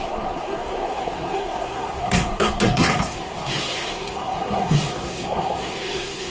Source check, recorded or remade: remade